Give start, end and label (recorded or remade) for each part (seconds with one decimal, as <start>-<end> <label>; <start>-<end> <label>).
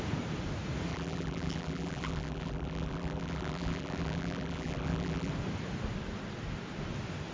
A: 0.0-0.9 recorded; 0.9-5.3 remade; 5.3-7.3 recorded